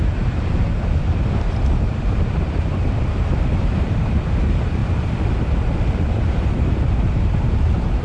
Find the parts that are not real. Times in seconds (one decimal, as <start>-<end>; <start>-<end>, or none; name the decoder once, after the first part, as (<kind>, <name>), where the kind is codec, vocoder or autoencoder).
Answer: 0.0-4.8 (vocoder, BigVGAN v2); 6.1-8.0